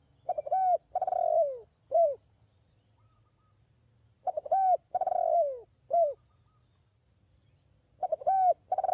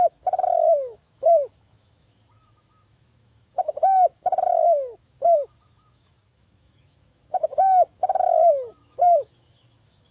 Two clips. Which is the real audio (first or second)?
first